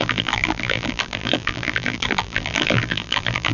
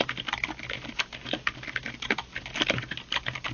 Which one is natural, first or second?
second